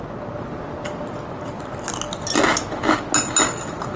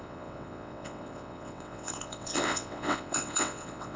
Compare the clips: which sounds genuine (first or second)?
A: first